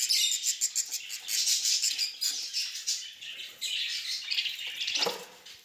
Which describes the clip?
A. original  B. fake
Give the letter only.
A